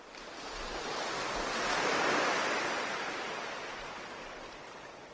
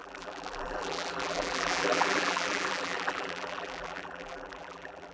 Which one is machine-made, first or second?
second